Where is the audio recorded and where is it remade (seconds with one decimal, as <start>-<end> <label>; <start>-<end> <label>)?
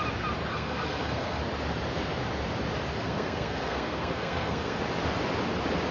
0.0-0.5 recorded; 0.5-1.4 remade; 1.4-2.9 recorded; 2.9-4.8 remade; 4.8-5.9 recorded